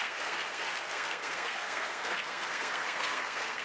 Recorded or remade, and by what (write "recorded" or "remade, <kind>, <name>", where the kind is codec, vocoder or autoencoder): remade, codec, SNAC